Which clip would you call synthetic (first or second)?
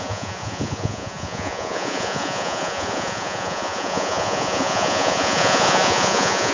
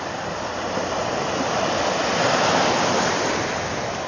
first